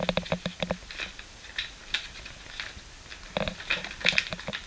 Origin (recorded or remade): recorded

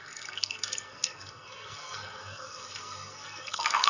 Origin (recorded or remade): remade